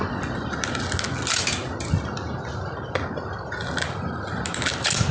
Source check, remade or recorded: recorded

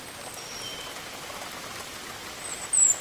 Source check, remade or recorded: recorded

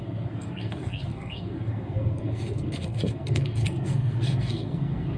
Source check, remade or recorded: remade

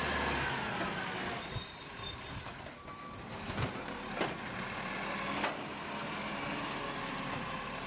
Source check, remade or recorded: recorded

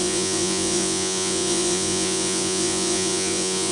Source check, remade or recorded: remade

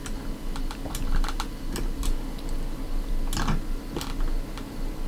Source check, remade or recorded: recorded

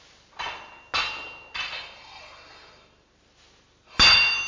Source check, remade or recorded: recorded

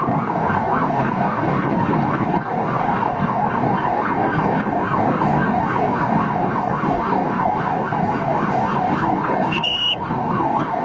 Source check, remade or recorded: remade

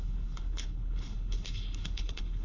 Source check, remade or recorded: remade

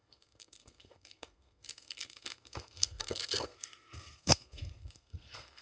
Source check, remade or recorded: remade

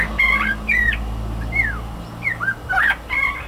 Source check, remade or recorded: recorded